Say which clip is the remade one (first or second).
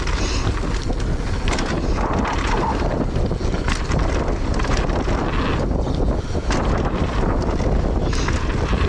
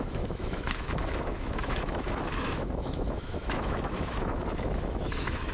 second